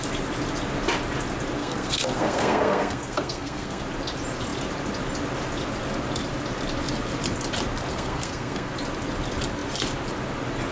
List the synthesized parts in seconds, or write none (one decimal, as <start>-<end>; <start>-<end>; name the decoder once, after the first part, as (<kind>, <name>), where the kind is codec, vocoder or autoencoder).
1.6-3.8 (codec, SNAC); 7.9-8.7